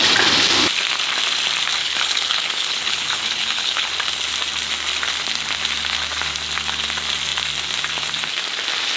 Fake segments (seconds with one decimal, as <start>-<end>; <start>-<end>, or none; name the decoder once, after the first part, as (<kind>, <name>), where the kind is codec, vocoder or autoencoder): 1.8-3.9 (codec, HILCodec)